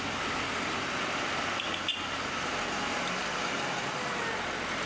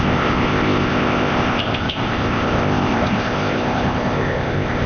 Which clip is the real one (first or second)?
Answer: first